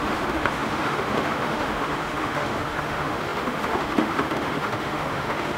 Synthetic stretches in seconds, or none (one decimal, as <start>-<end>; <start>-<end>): 0.0-5.6